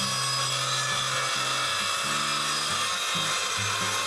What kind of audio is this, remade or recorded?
recorded